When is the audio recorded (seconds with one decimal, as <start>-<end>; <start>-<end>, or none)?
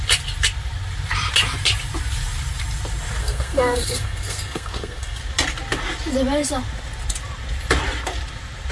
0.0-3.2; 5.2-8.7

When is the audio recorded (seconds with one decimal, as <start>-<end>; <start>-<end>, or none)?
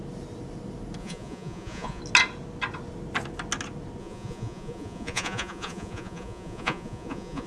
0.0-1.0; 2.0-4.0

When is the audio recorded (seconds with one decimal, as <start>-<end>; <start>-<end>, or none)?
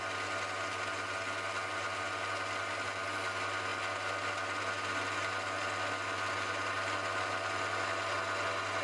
0.0-8.8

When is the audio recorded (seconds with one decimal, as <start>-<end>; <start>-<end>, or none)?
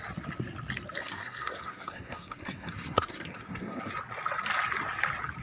0.0-1.0; 3.9-5.4